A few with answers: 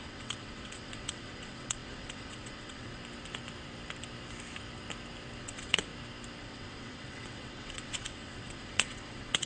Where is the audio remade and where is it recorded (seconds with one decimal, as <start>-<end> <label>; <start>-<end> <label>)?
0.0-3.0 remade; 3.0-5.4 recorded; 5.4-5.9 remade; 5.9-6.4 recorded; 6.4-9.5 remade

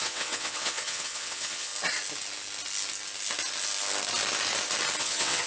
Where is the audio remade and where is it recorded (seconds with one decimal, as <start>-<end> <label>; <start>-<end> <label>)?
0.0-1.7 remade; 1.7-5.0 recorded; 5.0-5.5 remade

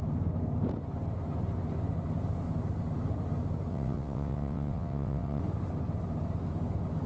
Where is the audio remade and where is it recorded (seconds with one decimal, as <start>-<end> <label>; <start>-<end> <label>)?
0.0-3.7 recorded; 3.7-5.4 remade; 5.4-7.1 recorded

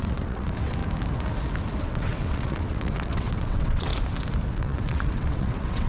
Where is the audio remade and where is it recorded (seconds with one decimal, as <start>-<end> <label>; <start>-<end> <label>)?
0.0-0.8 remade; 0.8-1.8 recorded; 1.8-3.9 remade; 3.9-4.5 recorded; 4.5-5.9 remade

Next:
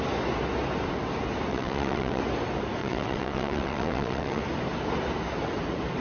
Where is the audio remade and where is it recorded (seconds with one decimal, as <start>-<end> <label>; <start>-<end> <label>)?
0.0-1.5 recorded; 1.5-2.2 remade; 2.2-2.8 recorded; 2.8-4.4 remade; 4.4-6.0 recorded